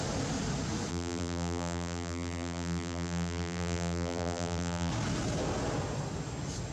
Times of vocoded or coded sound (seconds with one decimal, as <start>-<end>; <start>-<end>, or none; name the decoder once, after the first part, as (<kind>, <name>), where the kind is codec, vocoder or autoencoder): 0.9-4.9 (vocoder, BigVGAN v2)